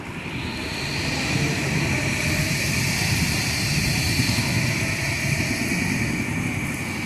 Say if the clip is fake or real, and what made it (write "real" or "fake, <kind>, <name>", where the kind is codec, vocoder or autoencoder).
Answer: real